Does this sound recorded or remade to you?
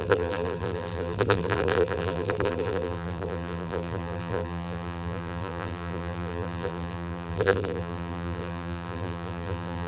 remade